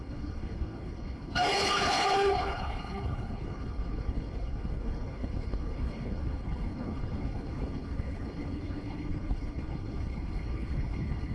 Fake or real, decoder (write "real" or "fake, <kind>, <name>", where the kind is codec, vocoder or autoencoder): fake, codec, HILCodec